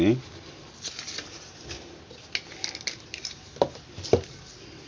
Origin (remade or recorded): recorded